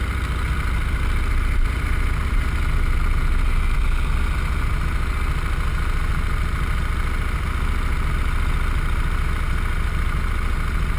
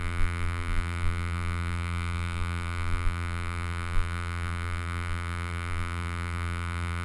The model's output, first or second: second